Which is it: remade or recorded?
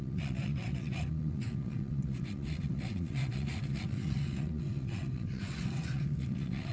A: remade